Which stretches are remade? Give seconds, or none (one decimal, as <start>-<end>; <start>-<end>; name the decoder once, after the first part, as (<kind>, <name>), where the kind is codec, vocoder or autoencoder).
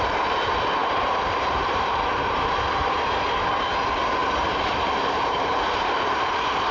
0.8-3.0 (vocoder, BigVGAN v2); 4.2-6.3